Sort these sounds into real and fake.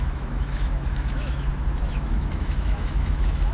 fake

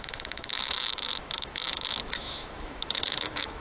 fake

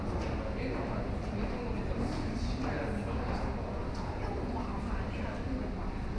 real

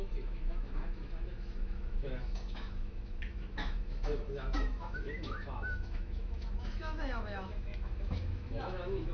fake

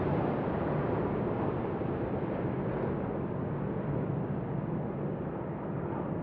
real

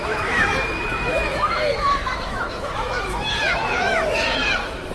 fake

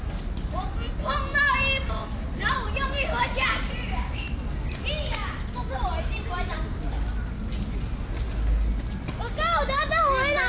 real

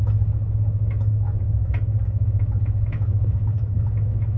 fake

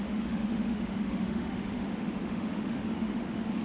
fake